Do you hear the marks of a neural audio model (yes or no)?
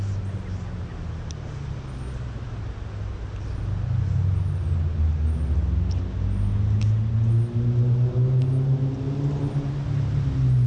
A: no